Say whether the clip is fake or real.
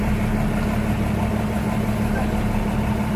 real